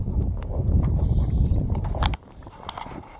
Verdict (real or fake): fake